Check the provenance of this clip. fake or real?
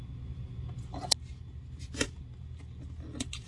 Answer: real